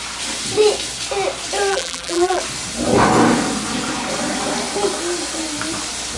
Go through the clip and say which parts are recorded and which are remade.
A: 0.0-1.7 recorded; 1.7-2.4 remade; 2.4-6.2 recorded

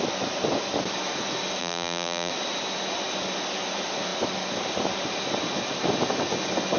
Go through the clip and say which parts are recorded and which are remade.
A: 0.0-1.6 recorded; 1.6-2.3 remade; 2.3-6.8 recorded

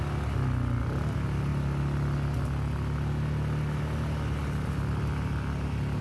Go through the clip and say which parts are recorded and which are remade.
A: 0.0-6.0 recorded

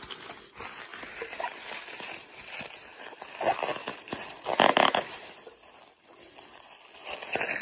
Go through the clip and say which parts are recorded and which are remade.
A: 0.0-0.9 recorded; 0.9-3.3 remade; 3.3-3.8 recorded; 3.8-5.2 remade; 5.2-7.6 recorded